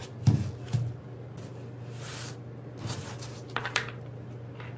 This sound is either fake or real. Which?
real